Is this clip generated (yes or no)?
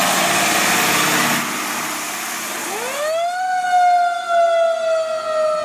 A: no